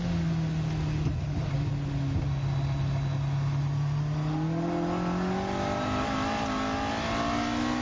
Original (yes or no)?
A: yes